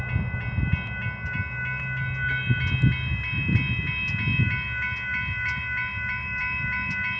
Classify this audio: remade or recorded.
recorded